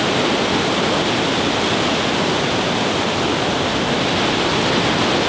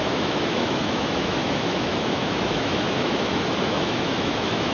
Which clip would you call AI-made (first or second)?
second